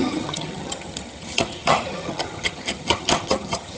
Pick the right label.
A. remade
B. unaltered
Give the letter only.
A